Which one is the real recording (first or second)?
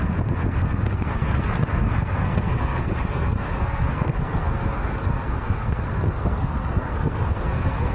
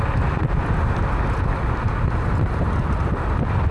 second